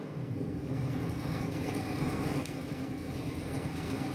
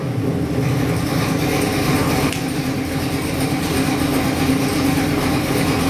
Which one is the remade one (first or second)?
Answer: first